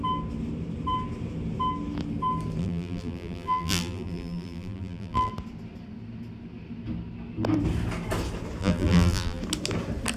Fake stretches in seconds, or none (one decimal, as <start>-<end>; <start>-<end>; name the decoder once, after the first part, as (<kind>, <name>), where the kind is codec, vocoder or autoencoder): 2.6-5.3 (vocoder, BigVGAN v2); 8.6-9.4